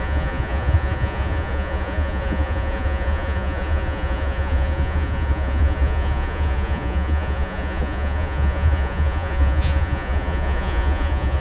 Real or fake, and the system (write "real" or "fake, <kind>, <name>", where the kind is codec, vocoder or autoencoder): fake, vocoder, Vocos